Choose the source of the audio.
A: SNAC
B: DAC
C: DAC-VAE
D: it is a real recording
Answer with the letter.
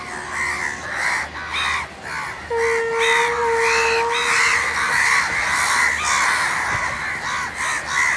D